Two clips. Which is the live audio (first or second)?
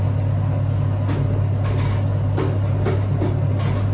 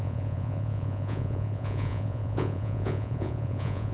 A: first